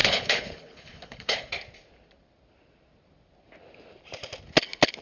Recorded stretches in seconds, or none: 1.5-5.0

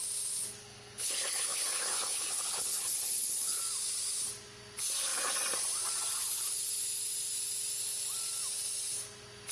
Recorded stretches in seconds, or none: 0.0-0.6; 3.6-9.5

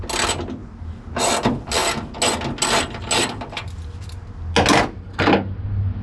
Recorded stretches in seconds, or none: 0.0-6.0

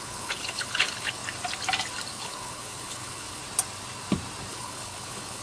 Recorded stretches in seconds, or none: 1.2-2.1; 3.4-4.5

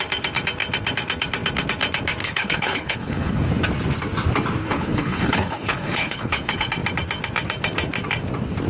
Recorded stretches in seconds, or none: 0.0-2.2; 3.5-4.6; 6.7-8.7

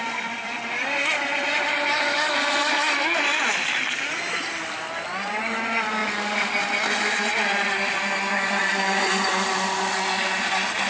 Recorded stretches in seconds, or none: 0.0-10.9

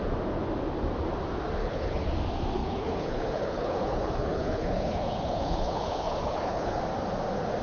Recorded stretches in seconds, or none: 0.0-1.6; 2.1-2.6; 6.8-7.6

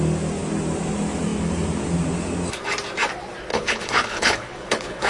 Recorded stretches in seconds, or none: 0.0-3.5